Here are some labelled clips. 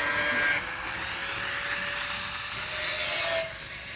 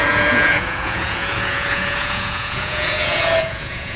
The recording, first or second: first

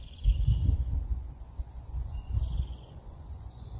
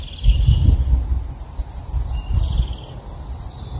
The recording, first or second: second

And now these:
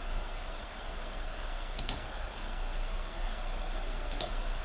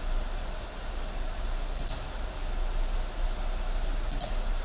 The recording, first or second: second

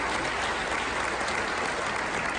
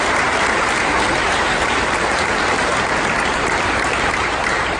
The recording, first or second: first